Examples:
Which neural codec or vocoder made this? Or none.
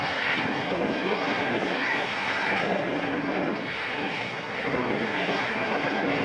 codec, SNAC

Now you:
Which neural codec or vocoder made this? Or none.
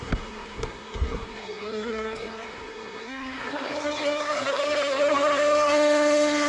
codec, SNAC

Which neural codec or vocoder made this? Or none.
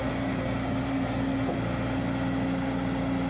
none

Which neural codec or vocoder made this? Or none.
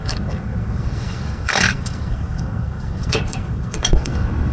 codec, SNAC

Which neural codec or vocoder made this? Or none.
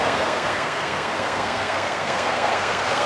codec, SNAC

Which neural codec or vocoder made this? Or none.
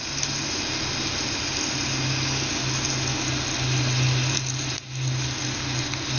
none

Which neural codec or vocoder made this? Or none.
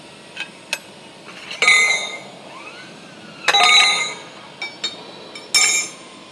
none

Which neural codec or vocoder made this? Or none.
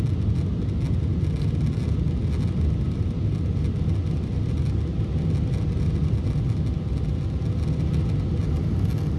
none